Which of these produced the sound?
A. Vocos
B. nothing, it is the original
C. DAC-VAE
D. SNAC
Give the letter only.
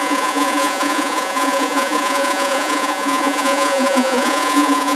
A